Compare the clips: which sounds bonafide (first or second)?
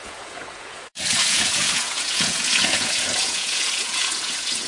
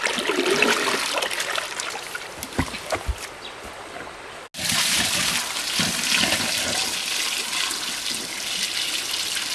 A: second